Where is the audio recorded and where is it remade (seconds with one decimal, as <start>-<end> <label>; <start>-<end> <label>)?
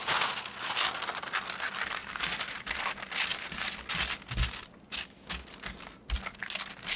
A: 0.0-7.0 recorded